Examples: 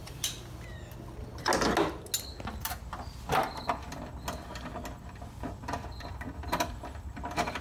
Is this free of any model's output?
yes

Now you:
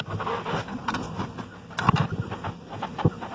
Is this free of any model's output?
yes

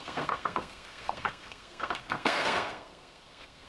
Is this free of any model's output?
no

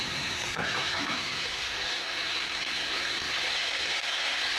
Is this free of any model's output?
no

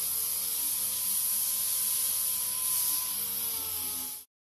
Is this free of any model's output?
yes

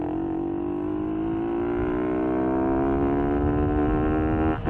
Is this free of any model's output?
yes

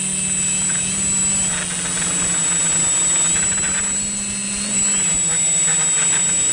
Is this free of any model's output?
yes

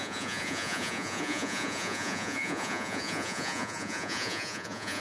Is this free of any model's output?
no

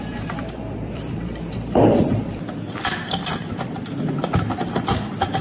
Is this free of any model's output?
no